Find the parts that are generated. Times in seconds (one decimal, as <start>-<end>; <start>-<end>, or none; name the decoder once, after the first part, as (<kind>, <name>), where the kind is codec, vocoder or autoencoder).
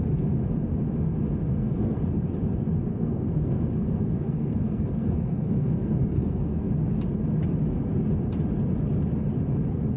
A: 1.5-2.0 (codec, SNAC); 2.9-6.7